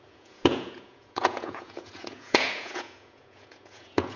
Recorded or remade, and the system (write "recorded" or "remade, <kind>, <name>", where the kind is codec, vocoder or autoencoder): remade, vocoder, Vocos